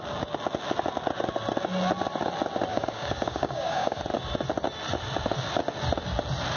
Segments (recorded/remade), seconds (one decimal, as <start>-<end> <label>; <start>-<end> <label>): 0.0-2.7 recorded; 2.7-4.0 remade; 4.0-6.6 recorded